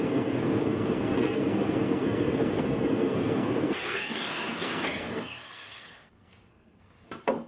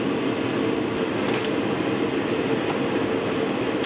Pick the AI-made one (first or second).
first